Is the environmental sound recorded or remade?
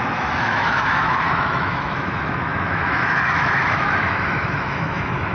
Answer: remade